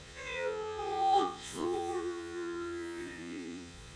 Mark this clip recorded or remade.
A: remade